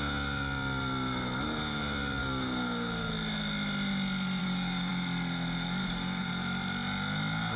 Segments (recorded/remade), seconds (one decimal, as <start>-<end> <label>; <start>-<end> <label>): 0.0-2.2 recorded; 2.2-3.1 remade; 3.1-4.4 recorded; 4.4-4.9 remade; 4.9-5.8 recorded; 5.8-6.3 remade; 6.3-7.6 recorded